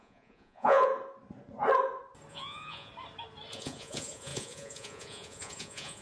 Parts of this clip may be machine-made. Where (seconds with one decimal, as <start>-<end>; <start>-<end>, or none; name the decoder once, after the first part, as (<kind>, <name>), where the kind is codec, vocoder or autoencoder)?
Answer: 0.0-0.9 (vocoder, Vocos); 2.3-2.9; 3.5-6.0

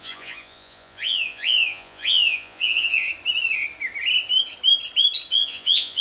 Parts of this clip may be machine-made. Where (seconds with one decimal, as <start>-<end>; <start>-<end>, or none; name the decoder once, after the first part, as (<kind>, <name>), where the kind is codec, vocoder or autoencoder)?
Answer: 0.0-3.0 (vocoder, Vocos); 5.3-6.0